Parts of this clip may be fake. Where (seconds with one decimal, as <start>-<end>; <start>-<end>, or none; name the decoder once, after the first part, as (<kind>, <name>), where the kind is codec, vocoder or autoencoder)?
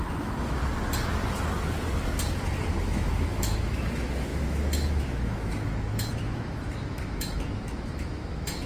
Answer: 0.0-0.6 (autoencoder, DAC-VAE); 2.8-8.7